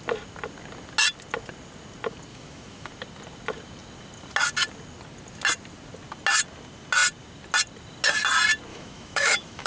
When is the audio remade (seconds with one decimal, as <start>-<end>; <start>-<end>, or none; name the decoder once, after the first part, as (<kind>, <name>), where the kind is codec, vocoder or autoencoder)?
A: 2.3-2.9 (autoencoder, DAC-VAE); 8.7-9.7